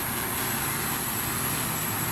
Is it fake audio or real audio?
real